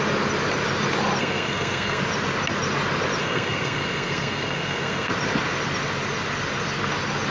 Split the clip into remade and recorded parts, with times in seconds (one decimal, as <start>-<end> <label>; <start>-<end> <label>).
0.0-1.2 recorded; 1.2-2.0 remade; 2.0-3.2 recorded; 3.2-5.1 remade; 5.1-7.3 recorded